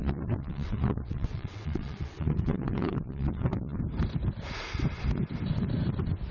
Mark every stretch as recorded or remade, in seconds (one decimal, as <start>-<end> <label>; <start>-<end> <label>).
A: 0.0-3.8 remade; 3.8-6.3 recorded